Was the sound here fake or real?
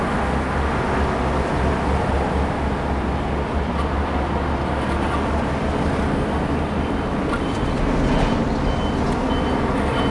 real